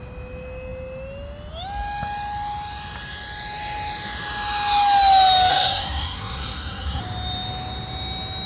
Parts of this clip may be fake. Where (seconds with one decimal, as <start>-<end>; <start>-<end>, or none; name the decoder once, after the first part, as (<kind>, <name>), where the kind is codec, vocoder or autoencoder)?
5.5-7.0 (codec, SNAC)